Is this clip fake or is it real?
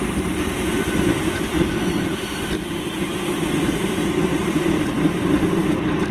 real